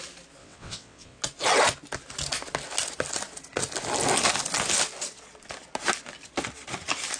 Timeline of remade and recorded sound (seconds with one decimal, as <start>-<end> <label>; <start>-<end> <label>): 0.0-0.4 recorded; 0.4-1.2 remade; 1.2-7.2 recorded